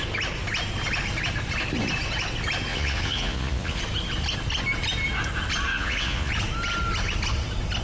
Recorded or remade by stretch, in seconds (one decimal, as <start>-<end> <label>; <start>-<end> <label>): 0.0-2.7 recorded; 2.7-3.8 remade; 3.8-5.7 recorded; 5.7-6.3 remade; 6.3-7.8 recorded